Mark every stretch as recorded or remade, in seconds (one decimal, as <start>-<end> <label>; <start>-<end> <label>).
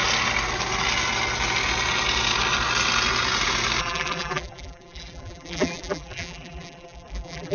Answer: 0.0-3.8 recorded; 3.8-7.5 remade